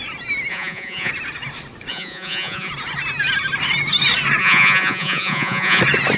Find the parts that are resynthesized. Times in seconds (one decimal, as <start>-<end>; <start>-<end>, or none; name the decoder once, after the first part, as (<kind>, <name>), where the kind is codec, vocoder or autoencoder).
0.5-1.1 (vocoder, Vocos); 1.9-2.7; 4.4-5.8